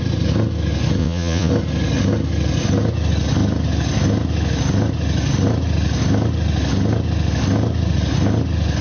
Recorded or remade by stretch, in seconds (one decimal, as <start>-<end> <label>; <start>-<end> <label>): 0.0-1.0 recorded; 1.0-1.5 remade; 1.5-8.8 recorded